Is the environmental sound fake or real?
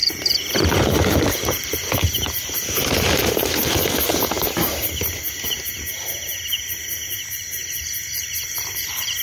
fake